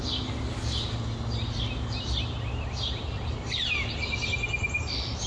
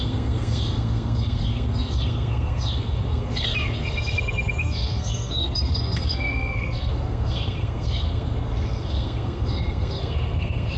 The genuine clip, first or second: first